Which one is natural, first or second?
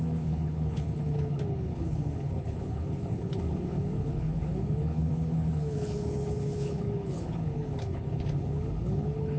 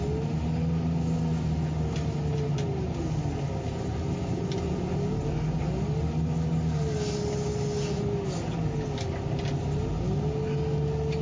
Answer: second